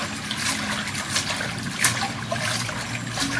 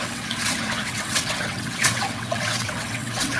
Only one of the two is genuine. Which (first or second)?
first